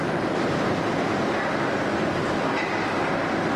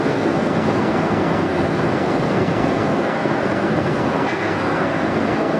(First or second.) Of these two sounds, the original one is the first